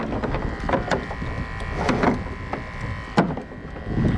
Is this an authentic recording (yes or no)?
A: yes